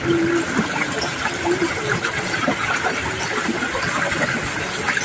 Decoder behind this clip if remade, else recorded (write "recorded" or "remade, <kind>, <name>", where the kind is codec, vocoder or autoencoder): recorded